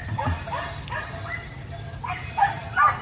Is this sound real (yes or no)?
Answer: yes